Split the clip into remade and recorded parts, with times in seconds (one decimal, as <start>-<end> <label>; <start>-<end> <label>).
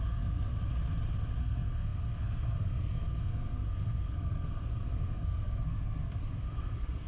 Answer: 0.0-0.5 remade; 0.5-1.4 recorded; 1.4-7.1 remade